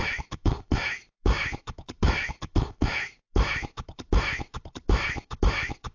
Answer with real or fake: fake